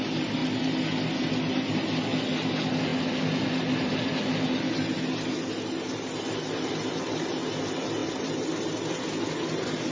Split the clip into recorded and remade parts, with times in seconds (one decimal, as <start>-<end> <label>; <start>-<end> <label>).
0.0-9.9 recorded